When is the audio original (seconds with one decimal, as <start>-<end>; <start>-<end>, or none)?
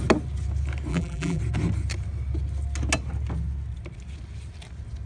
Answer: 0.0-0.9; 1.4-5.1